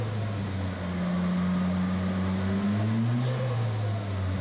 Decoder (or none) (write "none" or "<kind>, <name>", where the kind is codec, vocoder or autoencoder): none